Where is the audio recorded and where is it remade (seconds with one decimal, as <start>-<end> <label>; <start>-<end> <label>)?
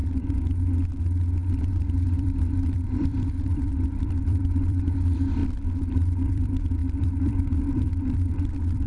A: 0.0-1.7 recorded; 1.7-8.9 remade